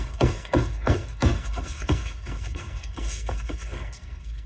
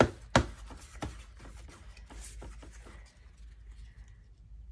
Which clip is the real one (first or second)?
second